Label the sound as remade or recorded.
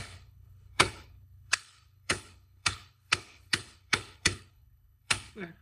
remade